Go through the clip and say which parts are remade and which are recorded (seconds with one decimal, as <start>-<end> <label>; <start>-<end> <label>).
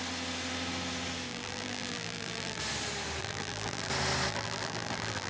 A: 0.0-1.3 recorded; 1.3-2.6 remade; 2.6-3.2 recorded; 3.2-3.9 remade; 3.9-4.3 recorded; 4.3-5.3 remade